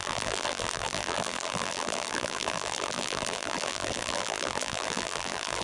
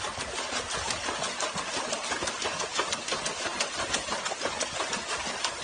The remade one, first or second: first